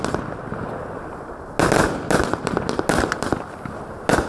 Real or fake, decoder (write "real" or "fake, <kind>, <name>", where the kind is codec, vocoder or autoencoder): real